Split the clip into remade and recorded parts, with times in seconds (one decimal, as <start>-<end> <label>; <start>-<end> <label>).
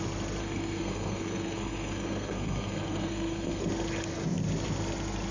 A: 0.0-0.4 recorded; 0.4-3.6 remade; 3.6-5.3 recorded